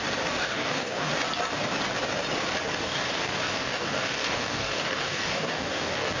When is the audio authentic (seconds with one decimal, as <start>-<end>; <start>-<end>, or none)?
0.0-0.4; 1.1-2.8